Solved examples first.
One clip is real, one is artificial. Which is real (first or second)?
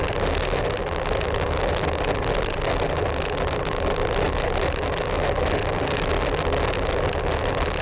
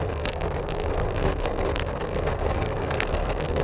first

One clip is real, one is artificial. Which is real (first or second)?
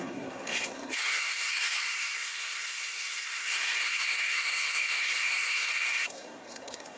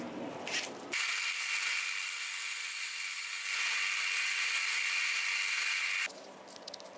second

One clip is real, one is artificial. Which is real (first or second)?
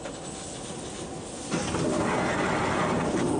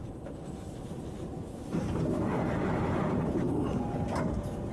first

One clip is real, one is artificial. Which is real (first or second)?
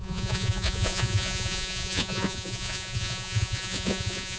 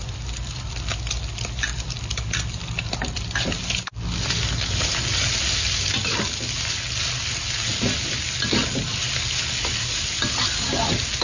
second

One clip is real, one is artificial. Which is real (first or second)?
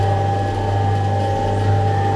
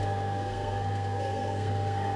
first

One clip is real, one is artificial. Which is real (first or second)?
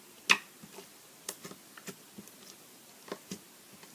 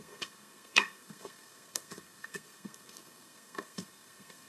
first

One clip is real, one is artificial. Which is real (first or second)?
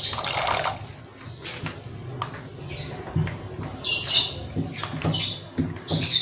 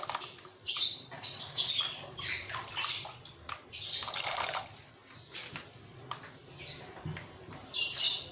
first